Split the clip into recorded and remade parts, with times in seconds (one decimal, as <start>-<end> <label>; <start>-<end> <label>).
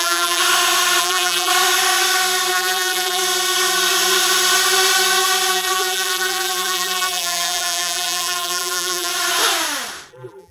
0.0-0.4 remade; 0.4-1.0 recorded; 1.0-1.5 remade; 1.5-2.5 recorded; 2.5-3.2 remade; 3.2-5.5 recorded; 5.5-9.1 remade; 9.1-10.1 recorded; 10.1-10.5 remade